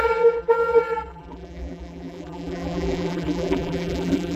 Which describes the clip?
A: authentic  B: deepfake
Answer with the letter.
B